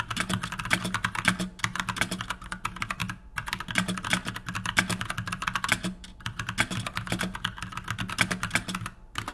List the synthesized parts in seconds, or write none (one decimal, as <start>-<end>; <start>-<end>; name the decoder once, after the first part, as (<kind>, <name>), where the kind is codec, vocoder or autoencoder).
none